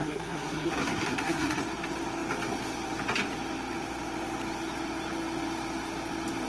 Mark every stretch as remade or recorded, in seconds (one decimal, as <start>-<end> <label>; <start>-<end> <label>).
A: 0.0-1.6 remade; 1.6-6.5 recorded